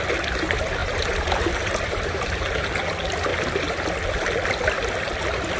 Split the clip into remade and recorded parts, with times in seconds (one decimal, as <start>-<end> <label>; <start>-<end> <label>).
0.0-0.8 recorded; 0.8-2.5 remade; 2.5-5.6 recorded